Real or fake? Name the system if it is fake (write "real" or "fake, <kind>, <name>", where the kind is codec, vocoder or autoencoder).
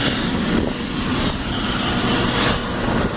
fake, vocoder, BigVGAN v2